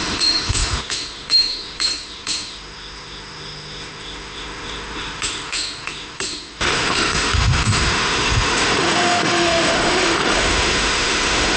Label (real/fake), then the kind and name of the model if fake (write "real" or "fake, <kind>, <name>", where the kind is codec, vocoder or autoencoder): fake, autoencoder, DAC-VAE